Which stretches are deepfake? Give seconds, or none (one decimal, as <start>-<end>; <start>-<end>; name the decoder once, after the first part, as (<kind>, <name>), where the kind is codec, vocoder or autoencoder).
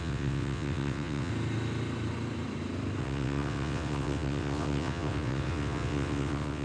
0.0-1.3 (vocoder, WaveNeXt); 3.0-6.6